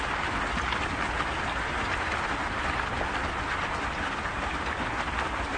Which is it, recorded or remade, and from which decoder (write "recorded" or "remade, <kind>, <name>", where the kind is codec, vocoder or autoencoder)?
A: recorded